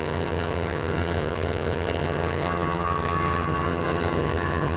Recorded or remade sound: remade